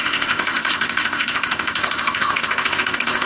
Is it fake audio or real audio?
fake